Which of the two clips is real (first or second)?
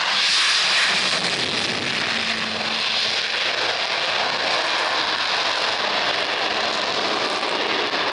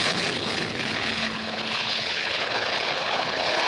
first